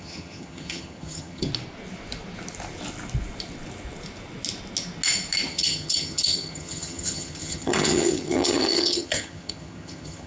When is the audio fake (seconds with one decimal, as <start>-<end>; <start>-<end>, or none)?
0.0-1.5; 5.5-10.3